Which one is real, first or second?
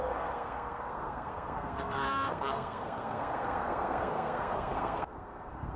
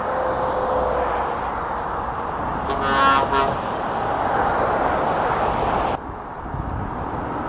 second